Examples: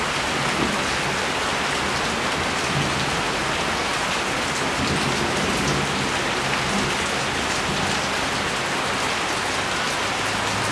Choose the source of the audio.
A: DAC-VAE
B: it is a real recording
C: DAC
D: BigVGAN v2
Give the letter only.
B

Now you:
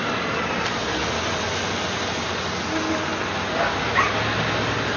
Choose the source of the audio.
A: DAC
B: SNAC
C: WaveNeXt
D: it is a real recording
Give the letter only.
D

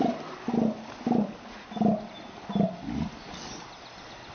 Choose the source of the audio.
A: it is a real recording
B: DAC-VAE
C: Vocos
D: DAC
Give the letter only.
A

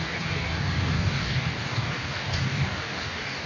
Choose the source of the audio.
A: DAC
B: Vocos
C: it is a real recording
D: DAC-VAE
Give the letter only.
A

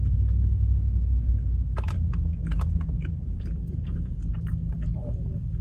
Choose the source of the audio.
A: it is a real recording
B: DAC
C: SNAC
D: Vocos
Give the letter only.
B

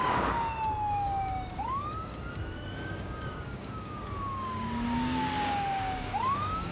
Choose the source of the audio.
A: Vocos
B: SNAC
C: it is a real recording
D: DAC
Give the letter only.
D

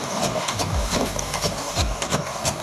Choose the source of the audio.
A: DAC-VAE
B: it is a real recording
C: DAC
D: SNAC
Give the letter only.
C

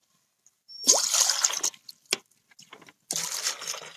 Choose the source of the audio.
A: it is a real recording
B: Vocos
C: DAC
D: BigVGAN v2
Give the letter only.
A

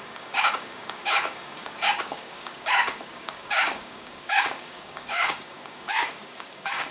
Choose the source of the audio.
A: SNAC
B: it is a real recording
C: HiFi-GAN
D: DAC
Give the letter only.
D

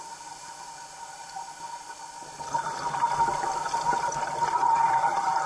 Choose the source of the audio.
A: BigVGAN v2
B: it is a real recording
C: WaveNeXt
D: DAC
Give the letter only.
B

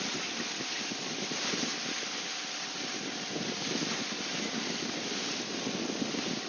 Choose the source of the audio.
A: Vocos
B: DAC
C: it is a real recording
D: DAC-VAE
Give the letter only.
C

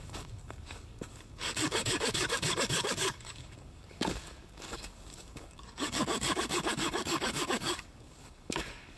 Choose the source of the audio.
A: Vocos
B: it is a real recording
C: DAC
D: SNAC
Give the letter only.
C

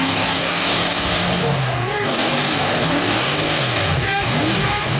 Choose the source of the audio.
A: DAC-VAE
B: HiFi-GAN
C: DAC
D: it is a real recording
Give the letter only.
C